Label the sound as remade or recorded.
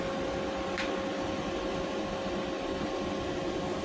recorded